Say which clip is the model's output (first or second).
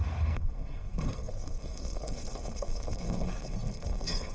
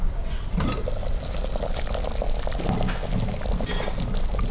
first